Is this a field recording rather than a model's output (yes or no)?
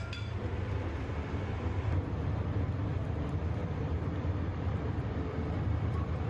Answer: no